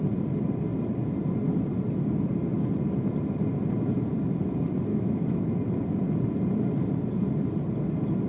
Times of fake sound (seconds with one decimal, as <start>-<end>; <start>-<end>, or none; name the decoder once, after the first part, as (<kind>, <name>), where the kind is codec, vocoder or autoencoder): 4.9-5.5 (autoencoder, DAC-VAE)

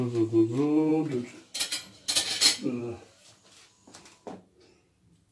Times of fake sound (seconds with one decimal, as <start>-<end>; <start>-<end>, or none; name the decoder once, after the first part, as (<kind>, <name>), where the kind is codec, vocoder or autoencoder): none

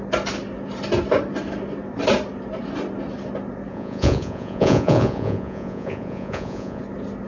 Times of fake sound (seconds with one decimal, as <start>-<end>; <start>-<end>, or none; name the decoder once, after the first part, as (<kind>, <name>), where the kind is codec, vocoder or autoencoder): 3.7-6.8 (vocoder, Vocos)

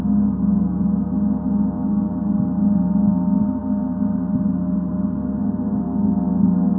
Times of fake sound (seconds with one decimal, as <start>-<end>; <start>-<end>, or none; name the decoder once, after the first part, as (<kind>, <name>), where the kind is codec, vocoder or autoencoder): none

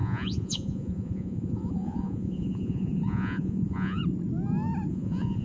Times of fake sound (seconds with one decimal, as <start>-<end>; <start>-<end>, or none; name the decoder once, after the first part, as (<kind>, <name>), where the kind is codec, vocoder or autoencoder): 0.0-4.0 (vocoder, Vocos); 4.9-5.4

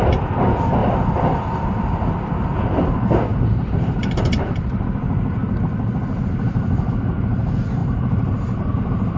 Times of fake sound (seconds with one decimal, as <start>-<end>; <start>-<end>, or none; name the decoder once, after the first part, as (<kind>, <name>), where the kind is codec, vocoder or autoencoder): 3.3-5.0 (vocoder, BigVGAN v2); 7.8-8.7

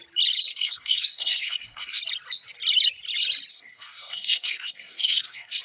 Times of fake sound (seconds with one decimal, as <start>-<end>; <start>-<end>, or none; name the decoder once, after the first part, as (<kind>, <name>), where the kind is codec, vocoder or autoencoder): 0.5-2.0 (codec, SNAC); 3.5-5.6